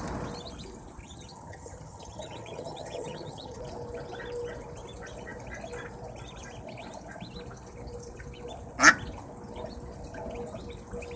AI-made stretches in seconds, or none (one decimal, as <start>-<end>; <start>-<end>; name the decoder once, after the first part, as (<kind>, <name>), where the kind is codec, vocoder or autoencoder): 1.0-3.6 (vocoder, HiFi-GAN)